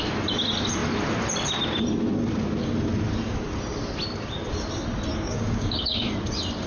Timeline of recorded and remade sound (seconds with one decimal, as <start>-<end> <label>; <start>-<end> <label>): 0.0-5.1 recorded; 5.1-6.1 remade; 6.1-6.7 recorded

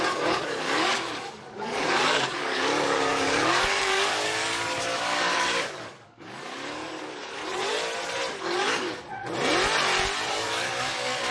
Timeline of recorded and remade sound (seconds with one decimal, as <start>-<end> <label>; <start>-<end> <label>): 0.0-7.4 remade; 7.4-8.4 recorded; 8.4-9.2 remade; 9.2-10.3 recorded; 10.3-11.3 remade

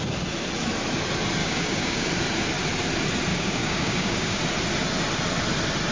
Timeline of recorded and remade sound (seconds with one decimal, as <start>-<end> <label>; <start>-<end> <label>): 0.0-1.4 recorded; 1.4-2.1 remade; 2.1-3.3 recorded; 3.3-4.4 remade; 4.4-5.9 recorded

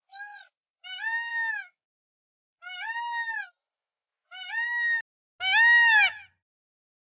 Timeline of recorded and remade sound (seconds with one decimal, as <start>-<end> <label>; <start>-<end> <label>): 0.0-1.3 recorded; 1.3-2.6 remade; 2.6-7.2 recorded

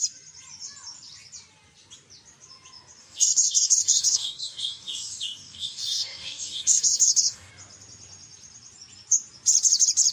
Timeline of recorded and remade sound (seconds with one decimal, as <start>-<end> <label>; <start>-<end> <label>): 0.0-3.0 recorded; 3.0-7.5 remade; 7.5-10.1 recorded

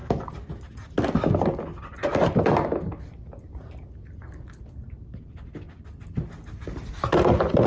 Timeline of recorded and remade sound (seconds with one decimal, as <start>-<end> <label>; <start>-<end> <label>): 0.0-7.7 recorded

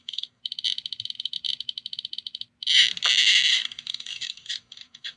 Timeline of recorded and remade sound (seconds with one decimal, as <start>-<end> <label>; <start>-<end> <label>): 0.0-0.4 remade; 0.4-3.5 recorded; 3.5-5.2 remade